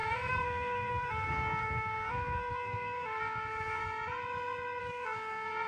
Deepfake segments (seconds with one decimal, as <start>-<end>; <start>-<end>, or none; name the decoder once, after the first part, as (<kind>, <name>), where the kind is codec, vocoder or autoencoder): 0.0-3.8 (codec, SNAC); 4.8-5.7